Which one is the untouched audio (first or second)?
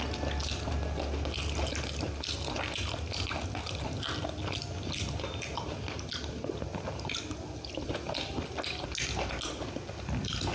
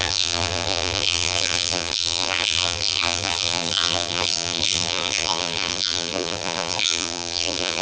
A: first